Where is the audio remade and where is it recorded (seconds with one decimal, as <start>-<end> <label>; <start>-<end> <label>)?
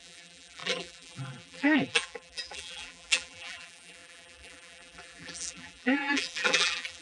0.0-7.0 remade